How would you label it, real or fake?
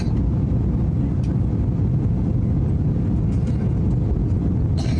real